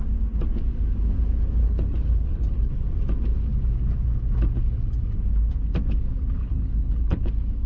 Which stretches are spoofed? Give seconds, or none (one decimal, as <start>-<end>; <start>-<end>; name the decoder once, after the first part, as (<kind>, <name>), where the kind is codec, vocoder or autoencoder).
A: 1.6-2.7 (codec, HILCodec); 6.4-7.3